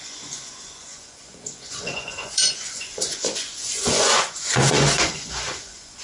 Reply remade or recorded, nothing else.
remade